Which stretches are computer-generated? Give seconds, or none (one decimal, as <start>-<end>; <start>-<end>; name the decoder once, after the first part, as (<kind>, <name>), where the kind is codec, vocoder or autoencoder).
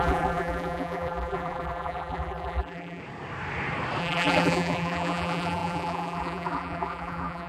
0.0-3.0 (vocoder, BigVGAN v2); 4.0-7.5